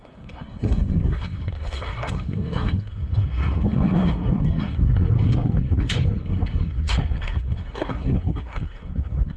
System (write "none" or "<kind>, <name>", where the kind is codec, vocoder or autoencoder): codec, SNAC